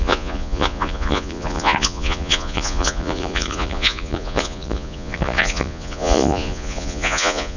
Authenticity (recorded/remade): remade